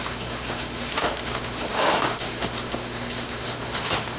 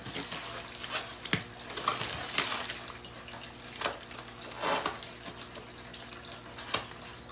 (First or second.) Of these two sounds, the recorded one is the second